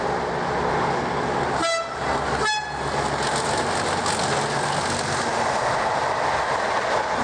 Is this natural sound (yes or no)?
yes